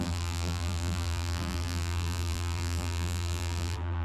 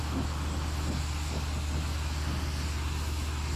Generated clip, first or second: first